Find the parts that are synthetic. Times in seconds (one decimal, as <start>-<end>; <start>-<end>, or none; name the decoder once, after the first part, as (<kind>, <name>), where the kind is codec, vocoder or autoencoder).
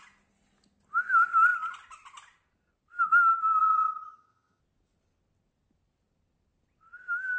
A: 3.6-4.6 (vocoder, HiFi-GAN)